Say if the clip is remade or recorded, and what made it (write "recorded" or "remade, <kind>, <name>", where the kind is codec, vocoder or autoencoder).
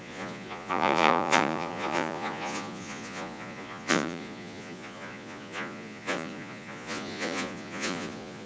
remade, vocoder, Vocos